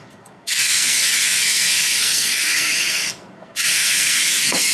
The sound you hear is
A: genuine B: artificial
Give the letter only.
B